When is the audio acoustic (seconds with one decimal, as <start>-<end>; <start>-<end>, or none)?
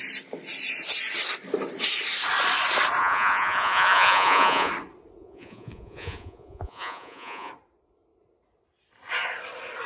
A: 0.0-3.0; 4.7-5.2; 7.5-9.9